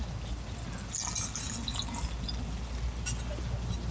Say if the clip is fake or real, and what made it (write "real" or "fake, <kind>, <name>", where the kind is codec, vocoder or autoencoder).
real